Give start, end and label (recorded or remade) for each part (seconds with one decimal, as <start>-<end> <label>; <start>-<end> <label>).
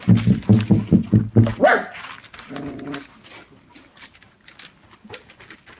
0.0-5.8 recorded